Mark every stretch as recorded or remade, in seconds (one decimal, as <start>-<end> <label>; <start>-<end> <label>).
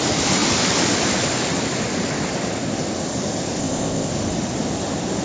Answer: 0.0-3.6 recorded; 3.6-4.1 remade; 4.1-5.2 recorded